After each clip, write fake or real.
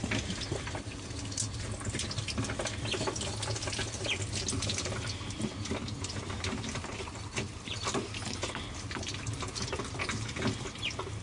real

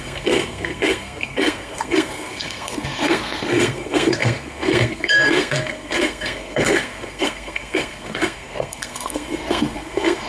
fake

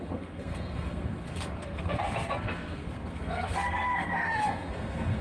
fake